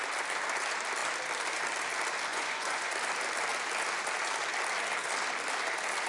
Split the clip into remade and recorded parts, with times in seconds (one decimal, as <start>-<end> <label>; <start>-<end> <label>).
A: 0.0-2.3 recorded; 2.3-2.9 remade; 2.9-6.1 recorded